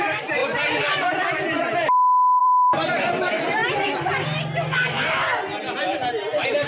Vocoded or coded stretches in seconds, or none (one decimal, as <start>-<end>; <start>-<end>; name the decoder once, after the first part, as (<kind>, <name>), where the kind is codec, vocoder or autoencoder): 0.0-0.4 (vocoder, BigVGAN v2); 2.4-3.6; 5.9-6.7